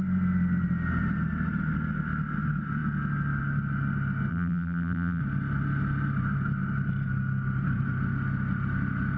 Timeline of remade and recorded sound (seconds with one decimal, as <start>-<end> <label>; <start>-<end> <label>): 0.0-4.3 recorded; 4.3-5.2 remade; 5.2-9.2 recorded